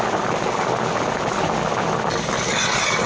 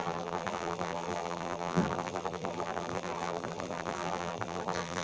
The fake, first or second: second